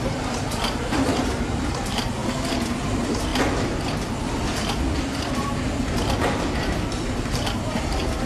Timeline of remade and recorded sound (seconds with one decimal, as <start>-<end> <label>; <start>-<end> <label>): 0.0-2.2 remade; 2.2-2.7 recorded; 2.7-3.3 remade; 3.3-6.7 recorded; 6.7-8.3 remade